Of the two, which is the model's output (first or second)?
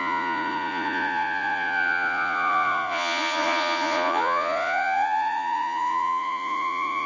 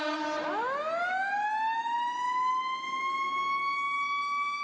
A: first